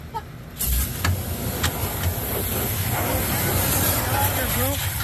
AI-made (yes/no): no